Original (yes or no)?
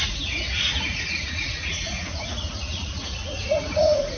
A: no